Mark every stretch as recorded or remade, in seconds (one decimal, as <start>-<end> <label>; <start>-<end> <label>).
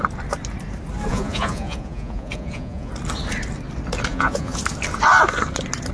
0.0-1.1 recorded; 1.1-2.9 remade; 2.9-4.1 recorded; 4.1-4.6 remade; 4.6-5.9 recorded